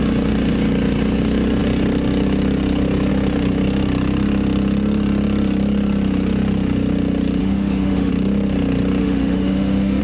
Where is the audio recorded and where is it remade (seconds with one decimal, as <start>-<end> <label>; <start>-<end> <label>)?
0.0-7.4 recorded; 7.4-8.1 remade; 8.1-9.0 recorded; 9.0-10.0 remade